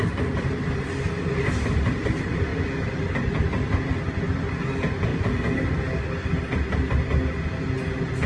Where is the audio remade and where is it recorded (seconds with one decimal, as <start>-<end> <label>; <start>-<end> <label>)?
0.0-8.3 recorded